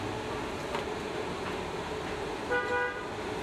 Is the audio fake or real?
real